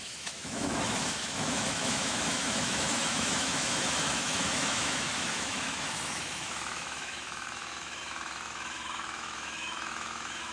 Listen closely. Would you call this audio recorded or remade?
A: remade